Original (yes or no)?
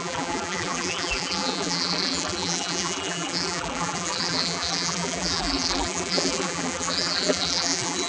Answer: no